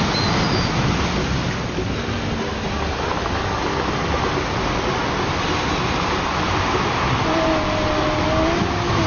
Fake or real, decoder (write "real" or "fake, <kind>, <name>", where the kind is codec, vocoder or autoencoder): real